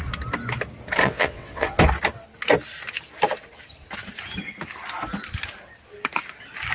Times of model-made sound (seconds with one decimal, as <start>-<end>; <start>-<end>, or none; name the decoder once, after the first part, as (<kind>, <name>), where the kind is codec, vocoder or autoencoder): 1.0-1.8 (vocoder, WaveNeXt)

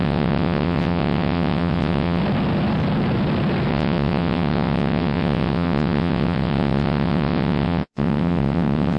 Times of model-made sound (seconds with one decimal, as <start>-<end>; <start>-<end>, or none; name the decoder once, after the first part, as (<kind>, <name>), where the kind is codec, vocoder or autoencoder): 0.0-2.2 (vocoder, WaveNeXt); 3.7-9.0

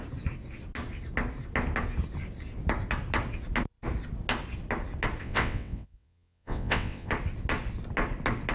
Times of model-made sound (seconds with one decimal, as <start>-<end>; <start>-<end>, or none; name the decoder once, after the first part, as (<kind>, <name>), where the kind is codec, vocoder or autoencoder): 5.2-7.1 (vocoder, WaveNeXt)

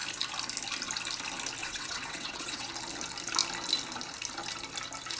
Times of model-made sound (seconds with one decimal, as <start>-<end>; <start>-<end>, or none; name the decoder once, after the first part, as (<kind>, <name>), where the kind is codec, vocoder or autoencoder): 1.6-2.7 (vocoder, WaveNeXt)

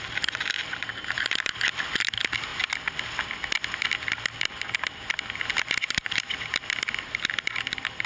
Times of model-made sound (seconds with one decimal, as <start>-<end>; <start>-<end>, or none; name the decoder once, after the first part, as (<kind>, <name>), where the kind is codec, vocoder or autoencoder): none

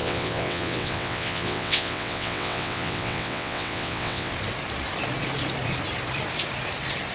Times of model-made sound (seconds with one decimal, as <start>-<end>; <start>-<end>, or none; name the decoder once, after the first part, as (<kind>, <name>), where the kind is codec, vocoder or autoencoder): 0.0-4.3 (vocoder, WaveNeXt)

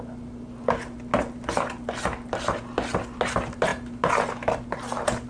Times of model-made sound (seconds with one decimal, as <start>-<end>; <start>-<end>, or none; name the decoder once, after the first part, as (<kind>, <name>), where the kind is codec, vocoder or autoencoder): none